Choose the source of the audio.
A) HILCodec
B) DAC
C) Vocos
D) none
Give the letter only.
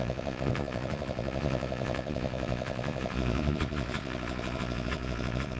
C